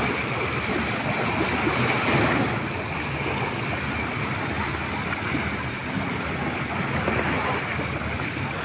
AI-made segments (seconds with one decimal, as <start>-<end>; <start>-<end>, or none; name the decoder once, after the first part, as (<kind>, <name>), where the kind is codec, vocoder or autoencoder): none